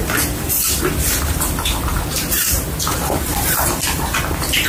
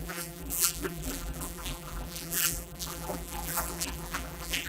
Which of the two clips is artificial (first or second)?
second